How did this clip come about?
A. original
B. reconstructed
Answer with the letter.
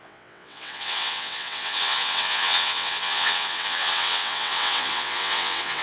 B